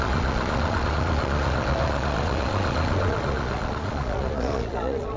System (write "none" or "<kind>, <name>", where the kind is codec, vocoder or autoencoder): vocoder, Vocos